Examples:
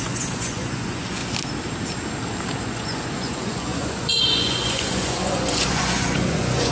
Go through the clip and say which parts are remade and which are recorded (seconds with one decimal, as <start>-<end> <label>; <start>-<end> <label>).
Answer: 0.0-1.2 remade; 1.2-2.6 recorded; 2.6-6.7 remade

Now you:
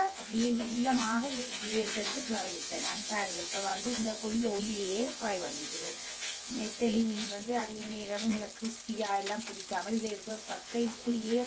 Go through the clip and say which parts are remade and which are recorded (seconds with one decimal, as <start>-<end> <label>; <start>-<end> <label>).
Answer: 0.0-8.5 remade; 8.5-10.3 recorded; 10.3-11.5 remade

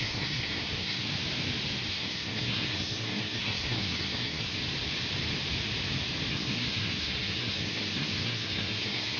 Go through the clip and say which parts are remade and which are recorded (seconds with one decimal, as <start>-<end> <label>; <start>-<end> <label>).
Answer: 0.0-1.1 remade; 1.1-1.9 recorded; 1.9-4.6 remade; 4.6-6.3 recorded; 6.3-9.2 remade

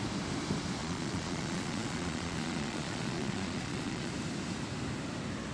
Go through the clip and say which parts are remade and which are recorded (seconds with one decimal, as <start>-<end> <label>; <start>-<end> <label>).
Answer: 0.0-0.8 recorded; 0.8-4.1 remade; 4.1-5.5 recorded

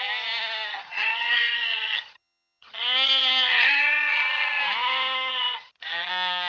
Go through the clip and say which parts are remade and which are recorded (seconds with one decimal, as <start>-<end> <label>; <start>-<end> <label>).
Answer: 0.0-0.7 recorded; 0.7-4.6 remade; 4.6-5.3 recorded; 5.3-6.1 remade; 6.1-6.5 recorded